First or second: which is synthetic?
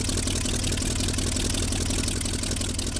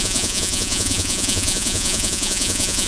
second